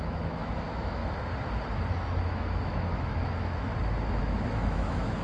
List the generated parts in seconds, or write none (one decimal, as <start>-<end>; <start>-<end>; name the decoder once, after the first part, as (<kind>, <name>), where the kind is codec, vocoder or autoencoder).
0.0-1.0 (autoencoder, DAC-VAE); 2.2-3.7; 4.2-5.2